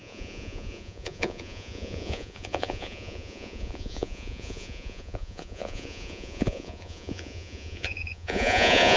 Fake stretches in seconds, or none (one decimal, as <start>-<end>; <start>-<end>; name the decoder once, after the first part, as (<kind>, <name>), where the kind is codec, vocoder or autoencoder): 0.0-9.0 (vocoder, Vocos)